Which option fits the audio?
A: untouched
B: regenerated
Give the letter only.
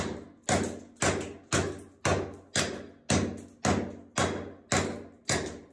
A